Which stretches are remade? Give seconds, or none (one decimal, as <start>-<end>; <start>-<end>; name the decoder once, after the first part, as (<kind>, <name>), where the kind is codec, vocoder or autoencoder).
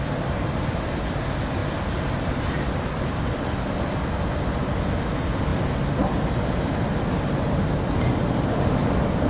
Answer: 0.0-1.6 (vocoder, BigVGAN v2); 2.8-5.5; 8.4-9.3